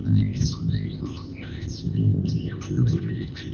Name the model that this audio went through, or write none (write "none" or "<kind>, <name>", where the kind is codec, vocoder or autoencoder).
codec, ZipCodec